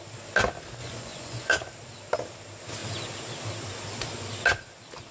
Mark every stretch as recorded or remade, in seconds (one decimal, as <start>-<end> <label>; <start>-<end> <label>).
0.0-0.8 recorded; 0.8-1.5 remade; 1.5-5.1 recorded